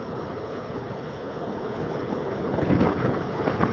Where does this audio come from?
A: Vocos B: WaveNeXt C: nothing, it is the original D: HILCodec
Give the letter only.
D